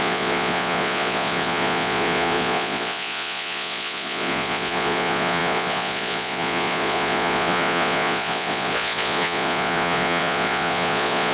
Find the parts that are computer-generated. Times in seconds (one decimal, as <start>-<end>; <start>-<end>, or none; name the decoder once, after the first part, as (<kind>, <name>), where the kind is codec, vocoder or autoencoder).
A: 0.0-11.3 (vocoder, Vocos)